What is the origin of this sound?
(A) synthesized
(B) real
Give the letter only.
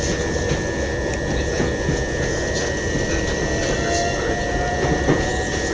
B